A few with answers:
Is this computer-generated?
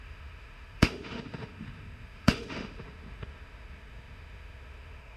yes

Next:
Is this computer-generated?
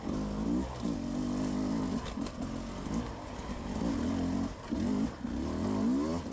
no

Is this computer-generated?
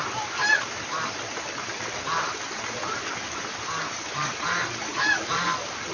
no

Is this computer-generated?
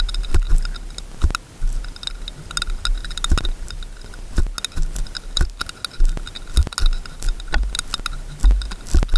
no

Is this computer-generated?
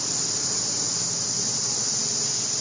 no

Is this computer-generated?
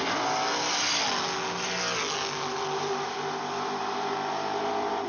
no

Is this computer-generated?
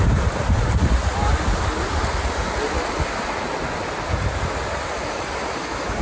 no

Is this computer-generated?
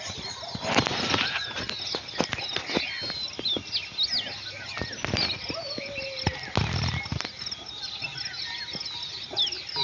no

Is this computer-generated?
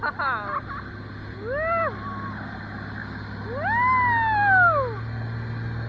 no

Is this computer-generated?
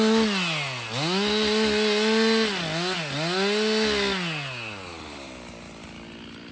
no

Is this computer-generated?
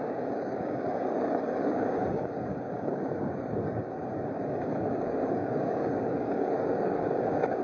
yes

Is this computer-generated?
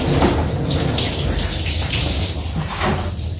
no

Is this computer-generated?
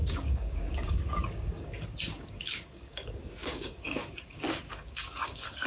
yes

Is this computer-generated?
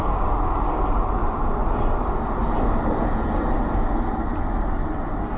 no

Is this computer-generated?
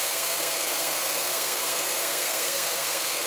yes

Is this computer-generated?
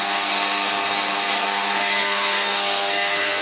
yes